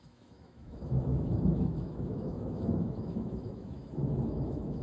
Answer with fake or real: fake